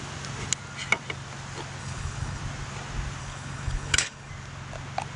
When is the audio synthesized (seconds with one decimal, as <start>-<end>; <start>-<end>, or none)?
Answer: 1.8-2.4; 3.2-4.3